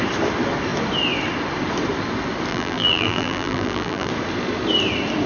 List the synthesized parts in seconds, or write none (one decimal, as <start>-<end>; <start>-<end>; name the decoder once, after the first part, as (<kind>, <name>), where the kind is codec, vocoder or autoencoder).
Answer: 2.5-4.1 (vocoder, BigVGAN v2)